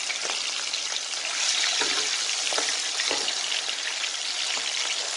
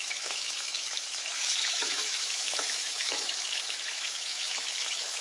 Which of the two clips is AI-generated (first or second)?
second